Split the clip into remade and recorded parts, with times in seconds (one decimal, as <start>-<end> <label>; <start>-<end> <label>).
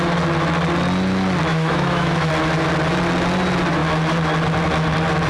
0.0-1.5 recorded; 1.5-2.3 remade; 2.3-5.3 recorded